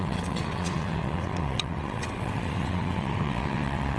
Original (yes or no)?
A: no